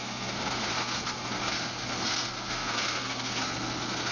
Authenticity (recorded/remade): remade